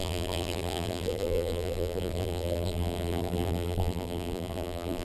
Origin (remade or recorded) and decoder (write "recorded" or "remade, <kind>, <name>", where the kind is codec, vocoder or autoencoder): remade, vocoder, BigVGAN v2